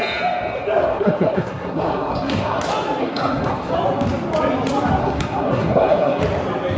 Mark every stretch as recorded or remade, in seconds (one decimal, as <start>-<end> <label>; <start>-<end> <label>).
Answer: 0.0-0.9 recorded; 0.9-2.6 remade; 2.6-3.0 recorded; 3.0-3.7 remade; 3.7-5.0 recorded; 5.0-6.2 remade; 6.2-6.8 recorded